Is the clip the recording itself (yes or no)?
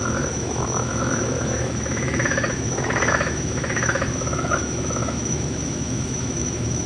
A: no